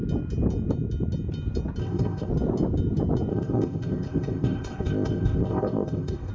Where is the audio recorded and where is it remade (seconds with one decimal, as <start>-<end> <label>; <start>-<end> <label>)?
0.0-1.8 recorded; 1.8-2.3 remade; 2.3-3.3 recorded; 3.3-6.3 remade